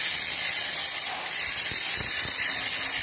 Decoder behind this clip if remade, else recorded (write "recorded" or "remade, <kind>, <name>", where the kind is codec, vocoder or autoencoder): remade, vocoder, BigVGAN v2